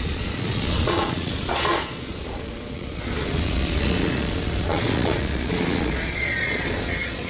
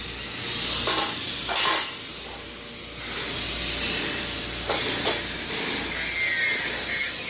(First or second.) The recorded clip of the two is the second